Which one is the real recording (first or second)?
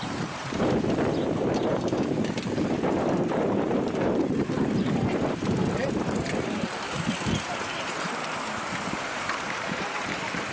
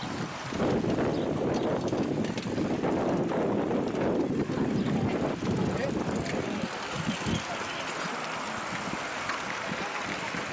second